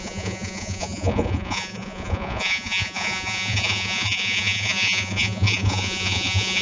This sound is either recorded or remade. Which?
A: remade